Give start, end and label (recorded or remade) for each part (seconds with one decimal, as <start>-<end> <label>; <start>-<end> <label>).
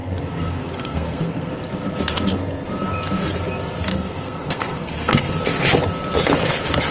0.0-1.5 remade; 1.5-3.9 recorded; 3.9-5.3 remade; 5.3-6.9 recorded